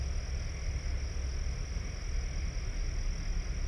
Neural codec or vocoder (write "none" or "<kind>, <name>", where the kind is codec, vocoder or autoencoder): none